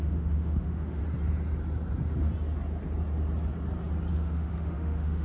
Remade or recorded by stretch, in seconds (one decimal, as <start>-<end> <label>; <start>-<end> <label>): 0.0-1.0 remade; 1.0-4.1 recorded; 4.1-5.2 remade